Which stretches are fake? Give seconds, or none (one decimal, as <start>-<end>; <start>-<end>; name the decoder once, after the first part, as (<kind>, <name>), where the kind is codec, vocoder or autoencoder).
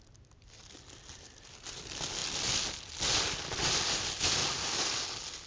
none